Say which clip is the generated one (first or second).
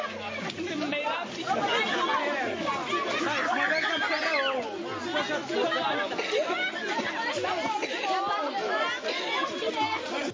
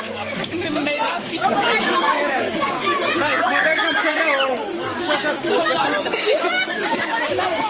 second